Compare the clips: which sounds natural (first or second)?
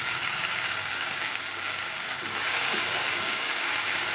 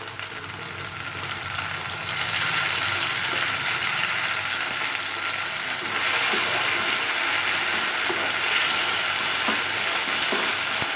second